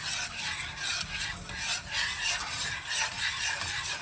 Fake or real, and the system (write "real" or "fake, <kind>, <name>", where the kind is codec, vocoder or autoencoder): real